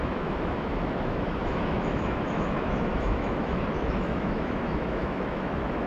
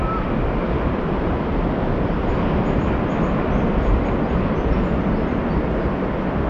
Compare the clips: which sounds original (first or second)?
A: second